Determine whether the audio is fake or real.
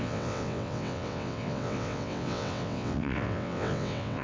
fake